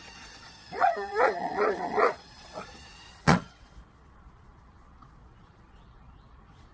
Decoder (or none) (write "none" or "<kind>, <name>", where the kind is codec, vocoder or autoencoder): vocoder, Vocos